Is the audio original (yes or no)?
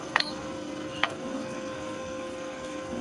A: no